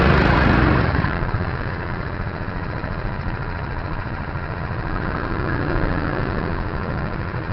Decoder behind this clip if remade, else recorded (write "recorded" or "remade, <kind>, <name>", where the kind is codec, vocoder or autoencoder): remade, vocoder, Vocos